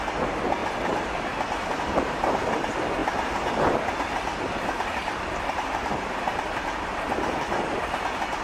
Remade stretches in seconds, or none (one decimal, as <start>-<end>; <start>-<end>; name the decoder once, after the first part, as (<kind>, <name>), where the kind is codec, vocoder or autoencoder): 0.0-0.6 (vocoder, BigVGAN v2); 1.8-8.4